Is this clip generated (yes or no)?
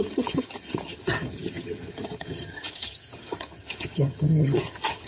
yes